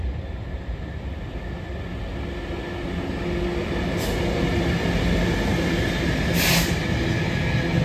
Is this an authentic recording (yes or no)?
yes